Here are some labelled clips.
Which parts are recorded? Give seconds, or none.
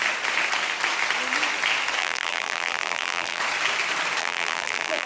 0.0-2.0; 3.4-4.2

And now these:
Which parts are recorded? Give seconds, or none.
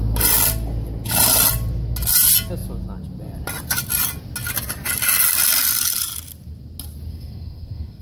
0.0-7.1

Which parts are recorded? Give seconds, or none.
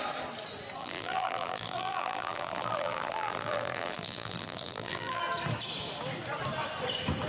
0.0-0.8; 5.2-7.3